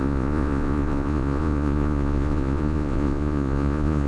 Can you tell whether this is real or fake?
fake